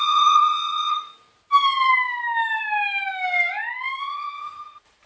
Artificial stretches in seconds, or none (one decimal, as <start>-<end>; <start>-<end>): 0.0-1.1; 4.0-5.1